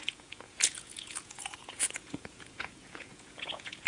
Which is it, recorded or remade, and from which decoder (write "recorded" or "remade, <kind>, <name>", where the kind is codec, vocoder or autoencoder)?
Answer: remade, vocoder, Vocos